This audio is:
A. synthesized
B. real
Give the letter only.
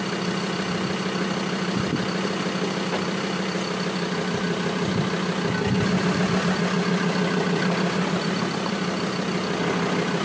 B